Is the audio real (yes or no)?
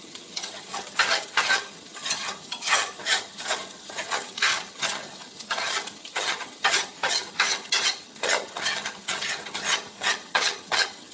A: no